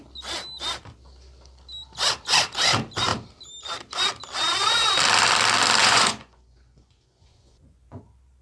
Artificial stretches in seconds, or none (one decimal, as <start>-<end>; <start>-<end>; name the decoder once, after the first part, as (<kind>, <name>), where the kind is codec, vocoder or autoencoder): 5.8-8.0 (vocoder, Vocos)